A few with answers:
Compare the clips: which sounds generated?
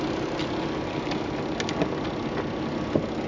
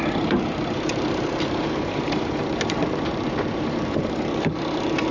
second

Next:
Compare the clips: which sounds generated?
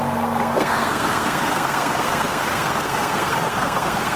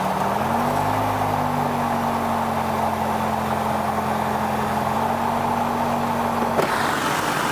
first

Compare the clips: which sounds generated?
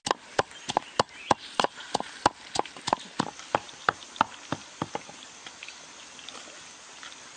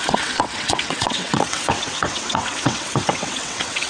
second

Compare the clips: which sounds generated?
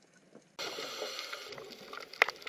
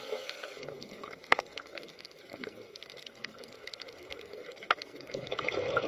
second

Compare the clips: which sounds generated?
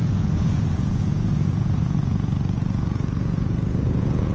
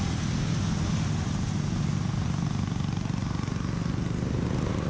first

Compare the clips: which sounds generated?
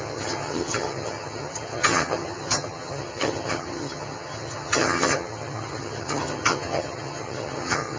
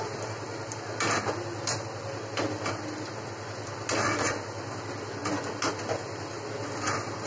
first